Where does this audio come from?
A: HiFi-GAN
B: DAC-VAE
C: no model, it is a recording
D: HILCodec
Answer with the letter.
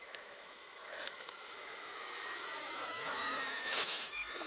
B